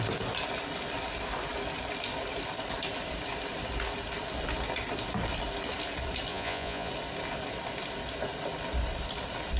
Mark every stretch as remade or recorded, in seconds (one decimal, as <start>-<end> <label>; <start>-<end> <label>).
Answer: 0.0-6.3 recorded; 6.3-6.9 remade; 6.9-9.6 recorded